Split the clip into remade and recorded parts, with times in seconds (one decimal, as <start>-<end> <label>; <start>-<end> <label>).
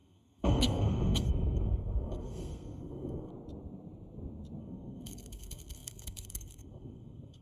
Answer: 0.0-3.3 remade; 3.3-4.6 recorded; 4.6-7.4 remade